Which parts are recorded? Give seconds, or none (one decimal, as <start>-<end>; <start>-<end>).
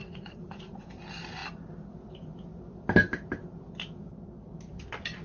0.9-5.2